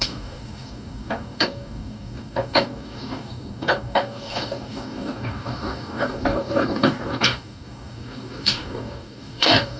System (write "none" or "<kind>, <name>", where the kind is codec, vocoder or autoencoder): codec, DAC